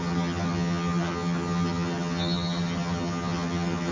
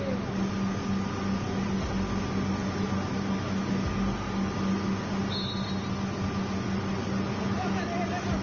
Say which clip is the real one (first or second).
second